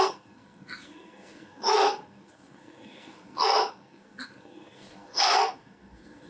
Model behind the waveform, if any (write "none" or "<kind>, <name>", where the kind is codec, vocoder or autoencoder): codec, SNAC